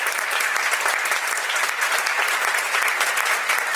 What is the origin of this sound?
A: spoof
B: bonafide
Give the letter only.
B